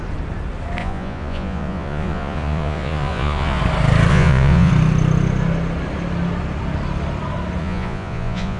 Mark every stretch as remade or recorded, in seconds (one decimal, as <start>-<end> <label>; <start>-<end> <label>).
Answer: 0.0-0.8 recorded; 0.8-3.6 remade; 3.6-4.1 recorded; 4.1-4.7 remade; 4.7-7.6 recorded; 7.6-8.6 remade